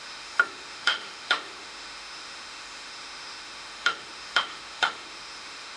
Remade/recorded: remade